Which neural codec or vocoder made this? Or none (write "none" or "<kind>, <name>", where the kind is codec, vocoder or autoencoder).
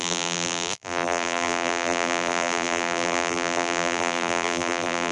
vocoder, BigVGAN v2